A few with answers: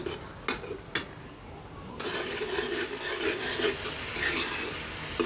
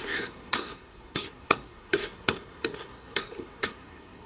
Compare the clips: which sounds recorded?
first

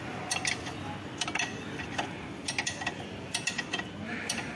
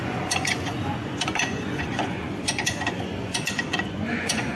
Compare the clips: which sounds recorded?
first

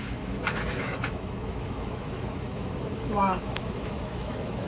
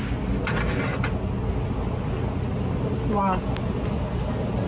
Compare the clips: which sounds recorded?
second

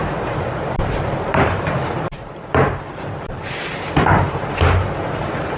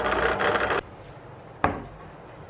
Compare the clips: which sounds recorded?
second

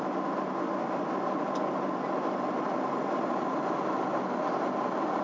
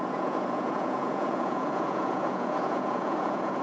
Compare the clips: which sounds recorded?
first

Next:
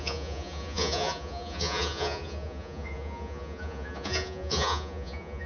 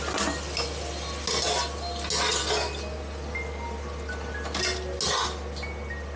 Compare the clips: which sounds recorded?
second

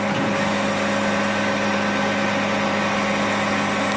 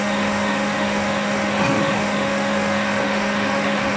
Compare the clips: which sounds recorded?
first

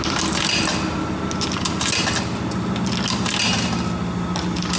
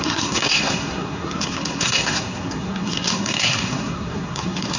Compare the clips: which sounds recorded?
first